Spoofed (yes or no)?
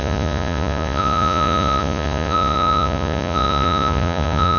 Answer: yes